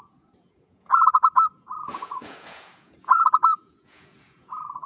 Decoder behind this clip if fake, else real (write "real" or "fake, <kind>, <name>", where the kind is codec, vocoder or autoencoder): fake, vocoder, Vocos